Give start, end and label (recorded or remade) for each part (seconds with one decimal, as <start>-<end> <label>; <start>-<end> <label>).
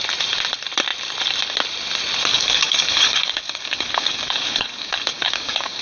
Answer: 0.0-2.3 recorded; 2.3-5.8 remade